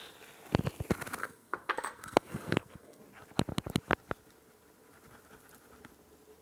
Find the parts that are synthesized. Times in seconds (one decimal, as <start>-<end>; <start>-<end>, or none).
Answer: 1.2-3.0